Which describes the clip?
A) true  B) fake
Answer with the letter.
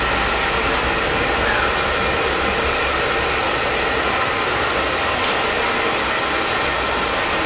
A